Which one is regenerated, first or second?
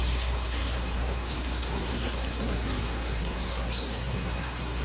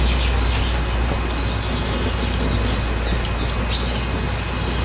first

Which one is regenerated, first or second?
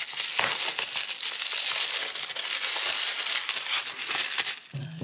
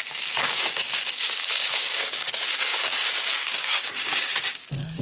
second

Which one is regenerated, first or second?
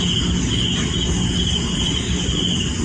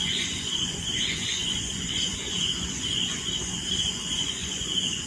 second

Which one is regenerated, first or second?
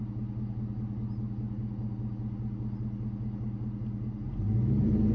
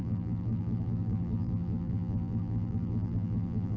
second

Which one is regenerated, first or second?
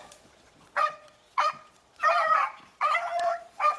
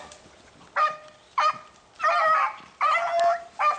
first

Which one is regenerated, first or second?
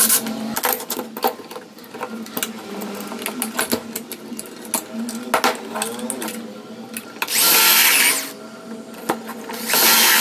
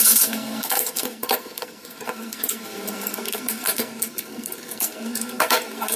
second